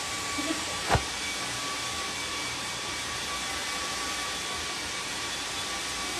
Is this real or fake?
fake